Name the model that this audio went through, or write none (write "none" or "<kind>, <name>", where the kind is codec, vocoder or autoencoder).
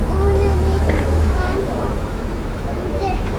autoencoder, DAC-VAE